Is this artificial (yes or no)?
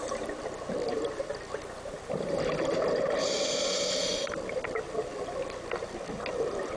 no